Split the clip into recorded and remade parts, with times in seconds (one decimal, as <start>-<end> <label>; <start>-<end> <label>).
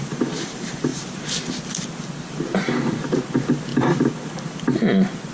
0.0-0.9 remade; 0.9-2.8 recorded; 2.8-5.3 remade